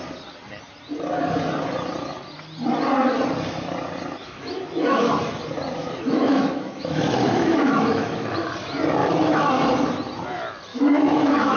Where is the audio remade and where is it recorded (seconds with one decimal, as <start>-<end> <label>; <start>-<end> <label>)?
0.0-4.2 recorded; 4.2-5.1 remade; 5.1-5.8 recorded; 5.8-8.5 remade; 8.5-9.0 recorded; 9.0-9.5 remade; 9.5-10.7 recorded; 10.7-11.6 remade